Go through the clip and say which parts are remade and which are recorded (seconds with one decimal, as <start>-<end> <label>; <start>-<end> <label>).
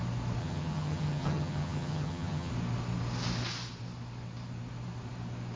0.0-0.4 recorded; 0.4-2.5 remade; 2.5-5.6 recorded